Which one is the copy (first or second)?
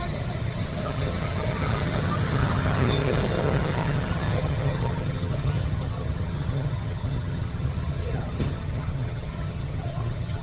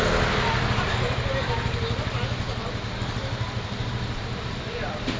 first